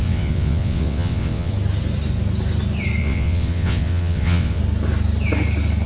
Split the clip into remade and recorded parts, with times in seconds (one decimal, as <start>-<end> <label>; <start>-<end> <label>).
0.0-1.5 remade; 1.5-3.0 recorded; 3.0-4.6 remade; 4.6-5.9 recorded